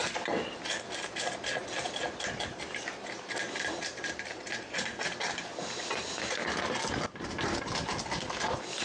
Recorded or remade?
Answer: recorded